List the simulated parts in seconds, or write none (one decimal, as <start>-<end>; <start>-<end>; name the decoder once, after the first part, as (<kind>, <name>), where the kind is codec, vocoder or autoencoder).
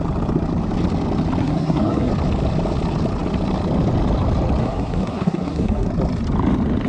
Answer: 1.4-2.1 (codec, SNAC); 4.6-5.9